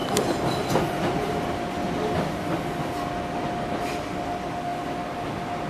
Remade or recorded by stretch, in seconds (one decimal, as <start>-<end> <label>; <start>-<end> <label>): 0.0-5.7 recorded